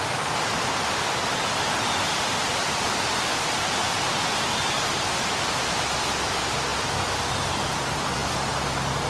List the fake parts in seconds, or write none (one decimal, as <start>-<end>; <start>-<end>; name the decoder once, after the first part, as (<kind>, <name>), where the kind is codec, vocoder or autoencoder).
none